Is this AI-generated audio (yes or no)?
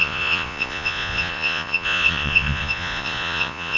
yes